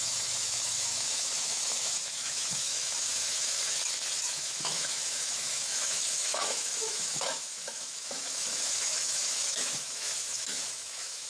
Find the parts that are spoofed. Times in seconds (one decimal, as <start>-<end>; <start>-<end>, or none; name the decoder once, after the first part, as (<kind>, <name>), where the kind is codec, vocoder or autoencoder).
0.0-11.3 (autoencoder, DAC-VAE)